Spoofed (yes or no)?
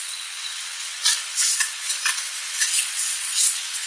yes